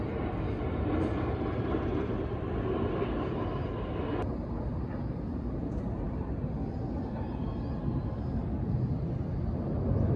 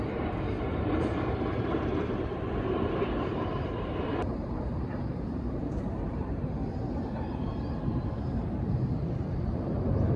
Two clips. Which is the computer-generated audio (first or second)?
second